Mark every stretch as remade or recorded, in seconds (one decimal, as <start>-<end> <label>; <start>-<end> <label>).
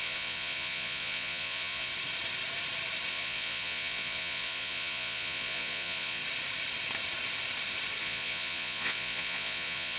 0.0-1.9 remade; 1.9-3.1 recorded; 3.1-6.2 remade; 6.2-8.0 recorded; 8.0-10.0 remade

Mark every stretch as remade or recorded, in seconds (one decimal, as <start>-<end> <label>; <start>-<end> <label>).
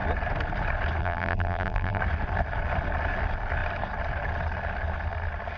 0.0-1.0 recorded; 1.0-2.0 remade; 2.0-5.6 recorded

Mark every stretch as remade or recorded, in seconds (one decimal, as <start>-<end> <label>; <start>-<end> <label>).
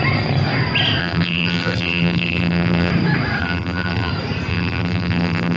0.0-1.0 recorded; 1.0-2.9 remade; 2.9-3.4 recorded; 3.4-4.1 remade; 4.1-4.5 recorded; 4.5-5.6 remade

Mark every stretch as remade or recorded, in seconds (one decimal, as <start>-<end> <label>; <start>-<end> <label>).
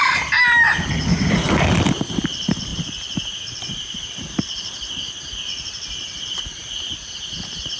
0.0-7.8 recorded